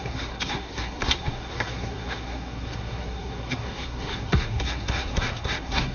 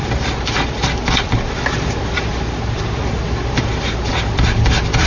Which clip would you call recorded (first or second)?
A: second